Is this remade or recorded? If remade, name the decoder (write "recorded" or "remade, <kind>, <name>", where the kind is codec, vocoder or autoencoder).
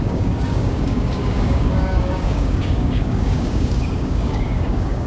remade, codec, DAC